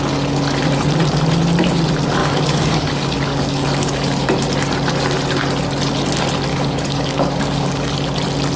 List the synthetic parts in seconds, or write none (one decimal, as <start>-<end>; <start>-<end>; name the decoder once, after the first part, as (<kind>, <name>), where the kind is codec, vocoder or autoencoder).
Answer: 2.2-4.3 (codec, DAC); 6.5-7.9